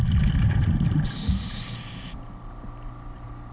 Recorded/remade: recorded